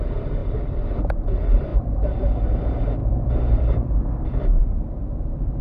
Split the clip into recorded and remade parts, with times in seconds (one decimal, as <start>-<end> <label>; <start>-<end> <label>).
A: 0.0-0.4 remade; 0.4-1.1 recorded; 1.1-4.6 remade; 4.6-5.6 recorded